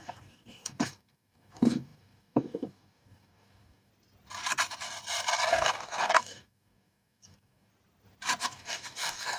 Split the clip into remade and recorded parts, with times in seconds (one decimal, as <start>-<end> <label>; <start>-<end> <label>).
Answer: 0.0-3.9 remade; 3.9-5.5 recorded; 5.5-7.7 remade; 7.7-8.4 recorded; 8.4-9.4 remade